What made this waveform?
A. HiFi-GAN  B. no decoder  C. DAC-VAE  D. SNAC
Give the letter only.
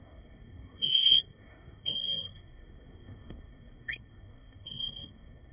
D